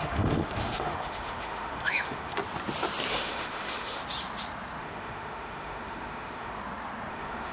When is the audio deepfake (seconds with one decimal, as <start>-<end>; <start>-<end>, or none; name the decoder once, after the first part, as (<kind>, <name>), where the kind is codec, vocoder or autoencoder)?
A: 0.0-2.4 (autoencoder, DAC-VAE); 3.1-4.0; 4.8-6.6; 7.1-7.5